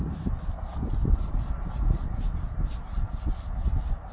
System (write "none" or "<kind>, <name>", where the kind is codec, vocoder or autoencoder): none